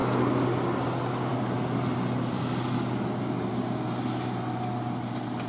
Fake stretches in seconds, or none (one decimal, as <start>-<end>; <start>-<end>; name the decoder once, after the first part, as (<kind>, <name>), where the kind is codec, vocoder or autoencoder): none